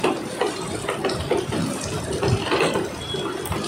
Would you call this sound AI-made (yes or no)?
no